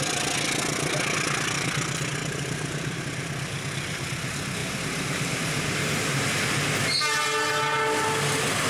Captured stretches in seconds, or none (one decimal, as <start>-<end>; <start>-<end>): 0.0-2.2; 3.0-4.6; 6.3-8.7